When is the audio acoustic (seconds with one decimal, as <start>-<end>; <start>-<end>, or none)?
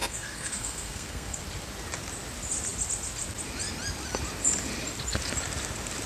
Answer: 1.4-6.1